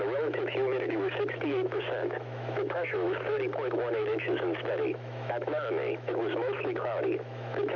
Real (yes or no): no